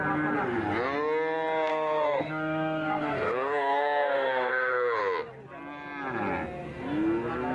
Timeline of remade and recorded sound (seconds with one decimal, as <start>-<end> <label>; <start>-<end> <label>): 0.0-1.7 recorded; 1.7-5.0 remade; 5.0-7.5 recorded